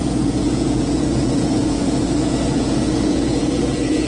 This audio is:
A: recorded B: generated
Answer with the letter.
B